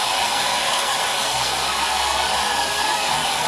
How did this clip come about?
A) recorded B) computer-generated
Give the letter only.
B